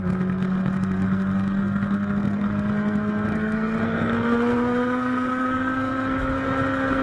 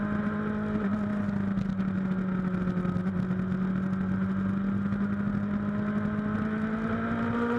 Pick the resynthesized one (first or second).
first